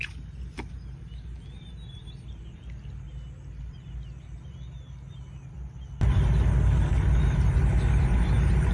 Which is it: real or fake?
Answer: real